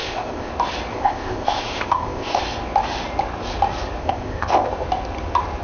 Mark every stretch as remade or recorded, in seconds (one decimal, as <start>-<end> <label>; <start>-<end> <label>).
0.0-0.5 remade; 0.5-0.9 recorded; 0.9-2.4 remade; 2.4-4.0 recorded; 4.0-4.7 remade; 4.7-5.6 recorded